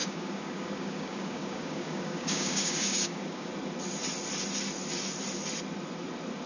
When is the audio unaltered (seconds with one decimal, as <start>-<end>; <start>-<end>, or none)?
3.5-6.5